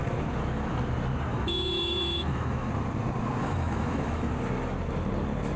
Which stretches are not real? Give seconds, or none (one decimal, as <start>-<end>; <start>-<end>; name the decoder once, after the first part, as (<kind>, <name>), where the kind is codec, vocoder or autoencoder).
1.3-2.7 (autoencoder, DAC-VAE); 3.4-4.3